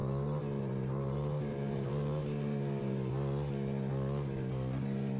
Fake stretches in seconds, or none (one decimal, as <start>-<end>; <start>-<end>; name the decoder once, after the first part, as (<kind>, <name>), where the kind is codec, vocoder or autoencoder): 0.0-3.1 (vocoder, BigVGAN v2)